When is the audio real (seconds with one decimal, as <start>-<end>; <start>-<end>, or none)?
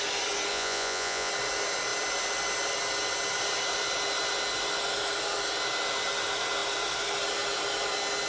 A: 0.0-0.5; 1.3-8.3